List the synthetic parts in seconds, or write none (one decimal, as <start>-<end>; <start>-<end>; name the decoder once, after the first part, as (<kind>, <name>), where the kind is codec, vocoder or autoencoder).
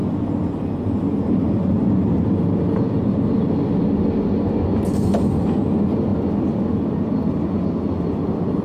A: none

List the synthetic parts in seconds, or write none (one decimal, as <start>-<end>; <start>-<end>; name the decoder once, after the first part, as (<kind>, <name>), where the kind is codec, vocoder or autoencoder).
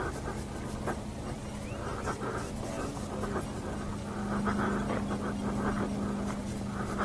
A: none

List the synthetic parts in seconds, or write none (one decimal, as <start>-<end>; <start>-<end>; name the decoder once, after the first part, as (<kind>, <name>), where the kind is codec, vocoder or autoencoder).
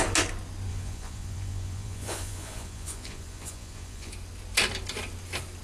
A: 0.7-4.1 (vocoder, Vocos)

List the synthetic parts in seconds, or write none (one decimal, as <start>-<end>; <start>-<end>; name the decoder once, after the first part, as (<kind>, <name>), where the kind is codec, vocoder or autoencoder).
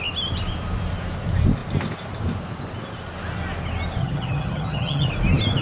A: 4.0-5.1 (vocoder, HiFi-GAN)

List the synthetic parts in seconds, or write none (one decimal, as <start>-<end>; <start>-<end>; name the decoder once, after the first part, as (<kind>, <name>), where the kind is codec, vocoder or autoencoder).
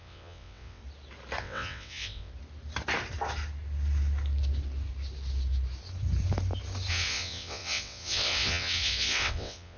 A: 0.0-0.8 (vocoder, WaveNeXt); 1.4-2.3; 6.9-9.8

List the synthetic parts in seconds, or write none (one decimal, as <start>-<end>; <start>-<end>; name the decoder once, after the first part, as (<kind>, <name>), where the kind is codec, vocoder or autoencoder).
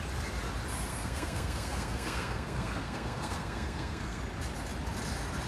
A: 0.9-4.2 (codec, SNAC)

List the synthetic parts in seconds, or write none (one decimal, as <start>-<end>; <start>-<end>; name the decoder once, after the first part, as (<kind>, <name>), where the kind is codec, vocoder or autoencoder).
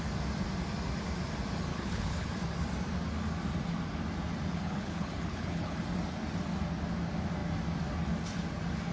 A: 1.7-2.3 (codec, HILCodec); 4.5-5.8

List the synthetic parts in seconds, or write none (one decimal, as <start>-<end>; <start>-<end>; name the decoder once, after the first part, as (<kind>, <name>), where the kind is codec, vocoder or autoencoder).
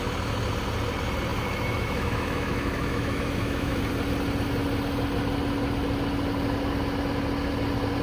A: 1.3-3.8 (autoencoder, DAC-VAE)